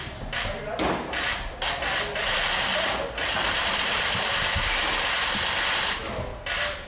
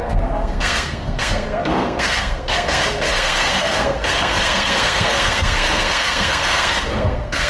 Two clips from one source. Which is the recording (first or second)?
first